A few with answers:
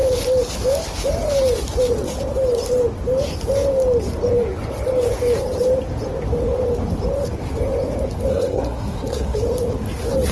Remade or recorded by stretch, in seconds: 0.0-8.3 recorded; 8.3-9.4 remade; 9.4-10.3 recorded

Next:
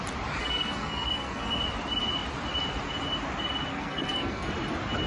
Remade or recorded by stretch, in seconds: 0.0-0.4 recorded; 0.4-1.6 remade; 1.6-3.7 recorded; 3.7-4.5 remade; 4.5-5.1 recorded

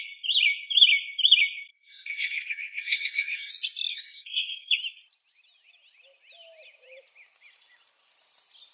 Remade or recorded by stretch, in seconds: 0.0-1.7 recorded; 1.7-3.5 remade; 3.5-3.9 recorded; 3.9-4.7 remade; 4.7-8.7 recorded